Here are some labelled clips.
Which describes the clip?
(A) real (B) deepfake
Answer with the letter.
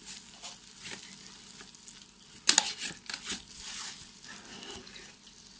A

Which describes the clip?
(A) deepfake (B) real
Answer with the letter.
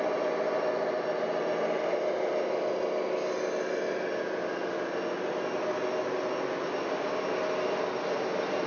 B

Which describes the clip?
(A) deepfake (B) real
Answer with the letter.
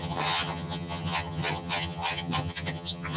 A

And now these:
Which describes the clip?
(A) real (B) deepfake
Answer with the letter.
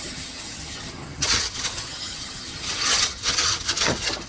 B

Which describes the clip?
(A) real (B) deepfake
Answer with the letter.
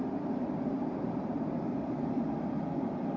A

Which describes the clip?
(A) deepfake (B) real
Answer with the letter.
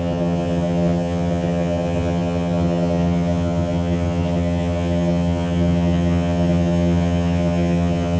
A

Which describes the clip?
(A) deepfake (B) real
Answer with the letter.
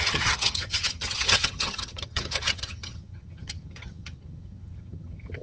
A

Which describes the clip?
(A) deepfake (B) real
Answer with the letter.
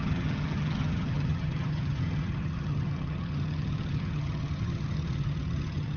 A